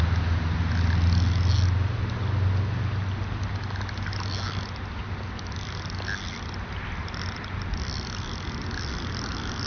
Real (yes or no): yes